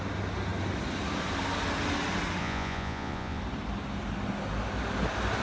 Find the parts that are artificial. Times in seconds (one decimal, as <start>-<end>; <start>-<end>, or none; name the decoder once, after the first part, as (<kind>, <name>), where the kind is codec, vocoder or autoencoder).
2.4-3.4 (vocoder, Vocos)